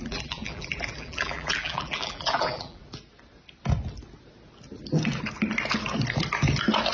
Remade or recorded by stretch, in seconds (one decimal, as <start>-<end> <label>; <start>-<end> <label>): 0.0-2.8 remade; 2.8-6.9 recorded

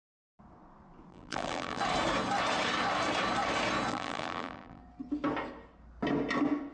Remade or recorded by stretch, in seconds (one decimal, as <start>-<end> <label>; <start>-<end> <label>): 0.0-1.1 recorded; 1.1-1.8 remade; 1.8-3.9 recorded; 3.9-4.8 remade; 4.8-6.7 recorded

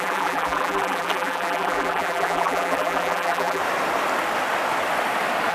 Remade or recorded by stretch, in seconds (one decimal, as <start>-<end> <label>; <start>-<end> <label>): 0.0-3.6 remade; 3.6-5.5 recorded

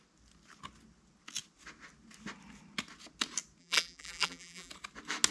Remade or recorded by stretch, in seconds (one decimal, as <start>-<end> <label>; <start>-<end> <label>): 0.0-3.6 recorded; 3.6-4.7 remade; 4.7-5.3 recorded

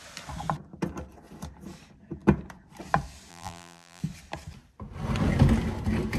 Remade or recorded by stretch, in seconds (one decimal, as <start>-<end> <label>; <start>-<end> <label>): 0.0-3.3 recorded; 3.3-4.0 remade; 4.0-6.2 recorded

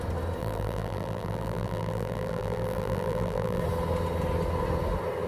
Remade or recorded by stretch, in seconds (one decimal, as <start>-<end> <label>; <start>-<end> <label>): 0.0-0.4 recorded; 0.4-3.6 remade; 3.6-5.3 recorded